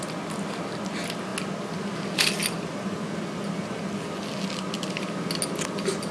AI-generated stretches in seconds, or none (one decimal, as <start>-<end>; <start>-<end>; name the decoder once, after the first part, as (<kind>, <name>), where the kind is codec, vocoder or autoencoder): none